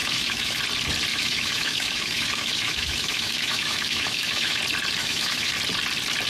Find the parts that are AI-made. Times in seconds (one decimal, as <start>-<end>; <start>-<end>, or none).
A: 0.0-0.6; 1.1-4.6; 5.0-5.5